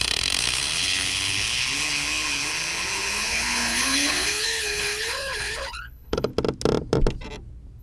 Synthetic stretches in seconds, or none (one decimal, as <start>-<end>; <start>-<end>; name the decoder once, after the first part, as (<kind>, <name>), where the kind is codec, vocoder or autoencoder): 0.0-6.3 (codec, HILCodec)